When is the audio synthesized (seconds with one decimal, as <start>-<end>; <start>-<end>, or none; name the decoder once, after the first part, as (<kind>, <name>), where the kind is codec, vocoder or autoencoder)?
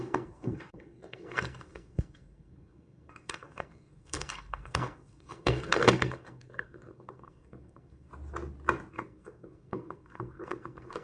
0.0-8.1 (codec, SNAC); 8.9-11.0